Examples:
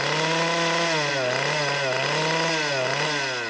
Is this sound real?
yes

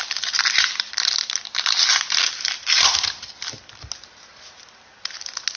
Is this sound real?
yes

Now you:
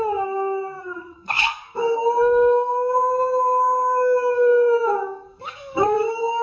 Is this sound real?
no